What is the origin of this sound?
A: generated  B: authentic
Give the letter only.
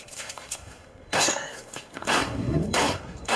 A